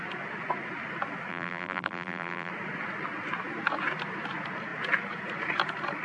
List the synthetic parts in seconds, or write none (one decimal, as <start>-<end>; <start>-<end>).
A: 1.3-2.5